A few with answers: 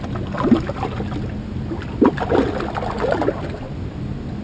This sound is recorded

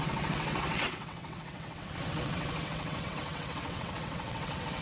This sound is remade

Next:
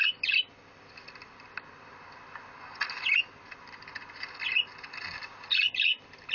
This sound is recorded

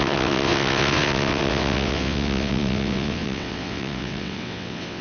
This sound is remade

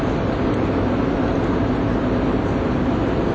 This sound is recorded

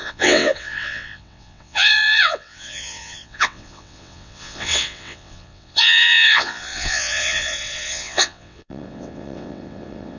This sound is remade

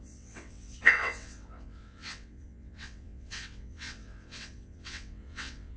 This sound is remade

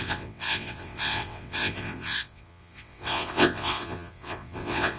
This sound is remade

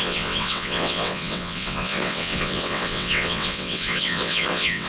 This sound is remade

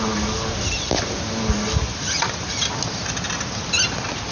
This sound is recorded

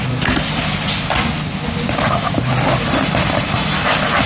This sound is recorded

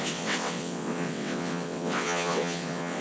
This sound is remade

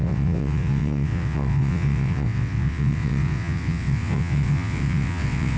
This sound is remade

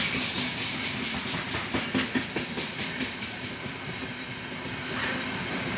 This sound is recorded